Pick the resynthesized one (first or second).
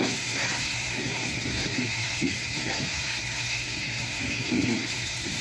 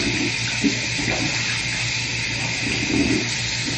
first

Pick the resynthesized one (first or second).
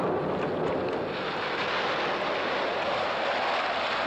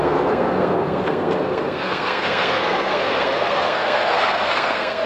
second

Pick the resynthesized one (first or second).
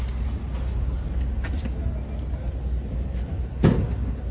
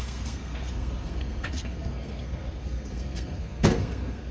second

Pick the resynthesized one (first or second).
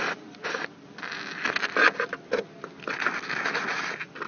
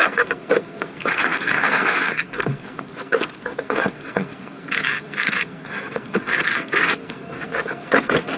second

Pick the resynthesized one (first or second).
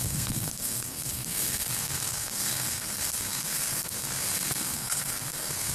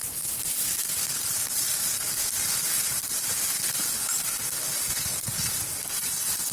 first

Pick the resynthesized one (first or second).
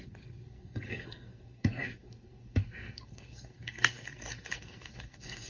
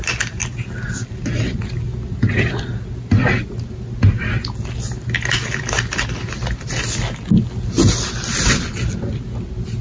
first